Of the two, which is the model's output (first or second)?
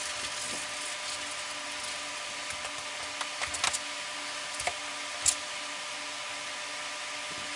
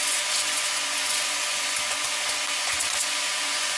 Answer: second